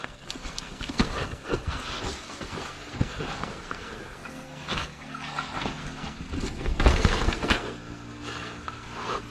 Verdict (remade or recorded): remade